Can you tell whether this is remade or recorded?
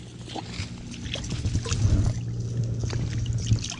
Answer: recorded